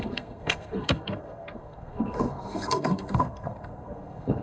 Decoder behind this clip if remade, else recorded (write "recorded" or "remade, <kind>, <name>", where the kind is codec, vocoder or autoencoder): remade, codec, SNAC